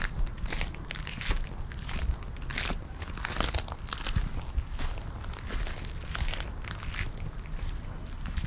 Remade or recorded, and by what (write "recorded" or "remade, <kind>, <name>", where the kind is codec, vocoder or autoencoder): recorded